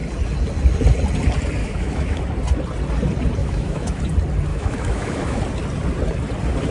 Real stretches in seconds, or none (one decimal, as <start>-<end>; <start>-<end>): 0.0-1.6; 2.2-3.4; 4.0-4.5; 5.4-6.7